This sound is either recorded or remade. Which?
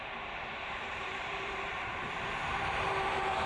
remade